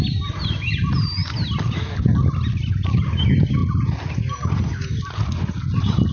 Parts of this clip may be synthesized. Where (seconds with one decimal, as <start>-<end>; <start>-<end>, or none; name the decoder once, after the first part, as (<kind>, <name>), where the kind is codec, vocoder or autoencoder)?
none